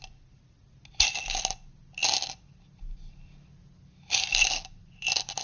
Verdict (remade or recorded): recorded